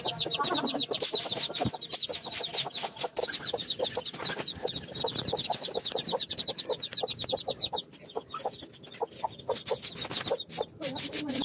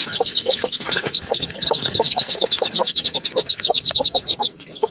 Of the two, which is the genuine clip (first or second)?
first